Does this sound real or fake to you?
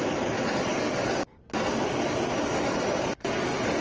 real